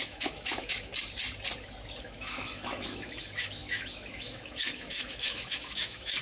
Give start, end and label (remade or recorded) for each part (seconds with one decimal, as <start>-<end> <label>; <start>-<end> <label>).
0.0-0.9 remade; 0.9-2.0 recorded; 2.0-6.2 remade